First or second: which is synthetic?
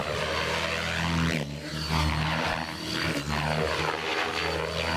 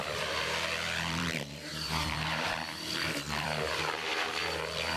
second